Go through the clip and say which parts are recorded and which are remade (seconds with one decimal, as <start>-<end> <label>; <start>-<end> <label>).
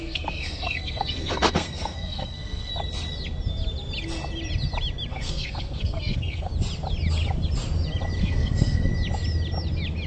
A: 0.0-2.7 remade; 2.7-5.1 recorded; 5.1-6.5 remade; 6.5-8.2 recorded; 8.2-8.9 remade; 8.9-10.1 recorded